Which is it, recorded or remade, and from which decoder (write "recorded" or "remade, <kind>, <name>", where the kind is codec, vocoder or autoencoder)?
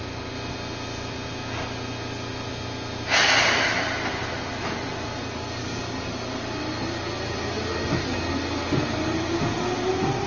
recorded